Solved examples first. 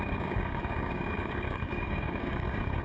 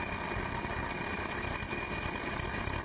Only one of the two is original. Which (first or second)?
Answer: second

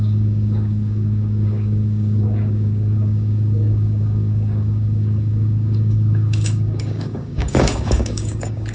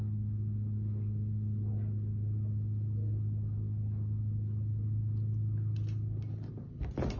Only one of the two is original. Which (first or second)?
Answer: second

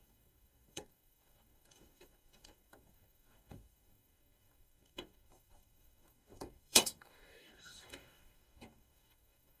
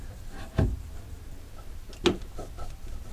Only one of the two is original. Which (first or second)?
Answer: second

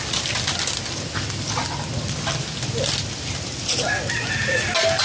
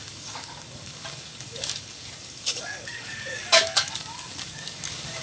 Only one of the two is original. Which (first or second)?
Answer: first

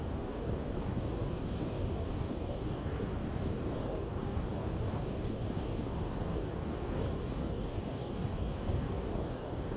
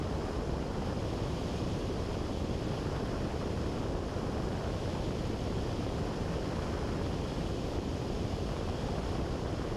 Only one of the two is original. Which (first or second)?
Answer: second